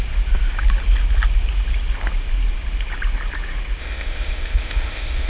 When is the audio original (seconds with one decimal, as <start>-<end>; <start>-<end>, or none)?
0.0-3.8